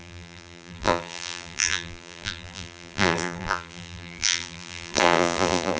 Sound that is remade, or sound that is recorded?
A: remade